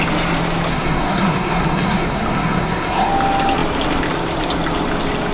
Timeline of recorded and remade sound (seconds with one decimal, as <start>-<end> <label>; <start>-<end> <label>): 0.0-0.7 recorded; 0.7-3.1 remade; 3.1-5.3 recorded

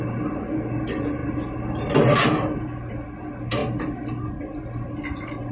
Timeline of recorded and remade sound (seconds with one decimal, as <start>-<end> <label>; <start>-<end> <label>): 0.0-5.5 recorded

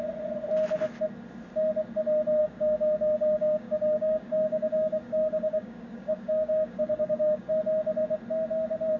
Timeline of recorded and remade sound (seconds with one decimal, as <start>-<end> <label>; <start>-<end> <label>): 0.0-2.4 recorded; 2.4-7.5 remade; 7.5-9.0 recorded

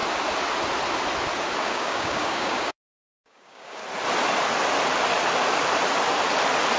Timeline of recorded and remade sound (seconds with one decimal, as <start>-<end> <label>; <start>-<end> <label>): 0.0-1.6 recorded; 1.6-3.8 remade; 3.8-6.8 recorded

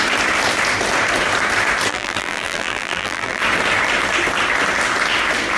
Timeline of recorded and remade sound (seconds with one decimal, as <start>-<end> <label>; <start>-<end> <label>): 0.0-1.9 recorded; 1.9-3.4 remade; 3.4-5.6 recorded

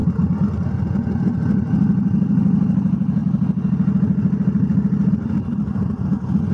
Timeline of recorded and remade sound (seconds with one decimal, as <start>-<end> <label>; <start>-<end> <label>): 0.0-1.3 recorded; 1.3-3.2 remade; 3.2-5.1 recorded; 5.1-6.5 remade